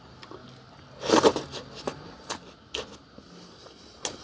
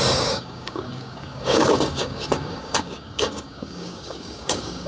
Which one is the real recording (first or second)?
first